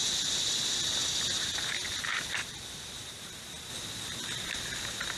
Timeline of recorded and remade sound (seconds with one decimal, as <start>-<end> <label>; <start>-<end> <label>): 0.0-0.5 remade; 0.5-2.4 recorded; 2.4-3.7 remade; 3.7-5.2 recorded